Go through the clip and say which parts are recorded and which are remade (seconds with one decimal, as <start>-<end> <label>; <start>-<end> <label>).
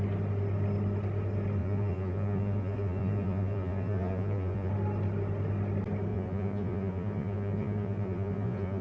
0.0-1.6 recorded; 1.6-4.7 remade; 4.7-6.1 recorded; 6.1-8.8 remade